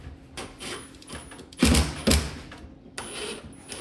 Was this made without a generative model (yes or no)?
yes